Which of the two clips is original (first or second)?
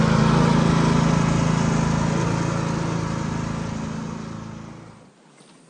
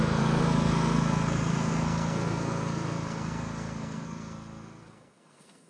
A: first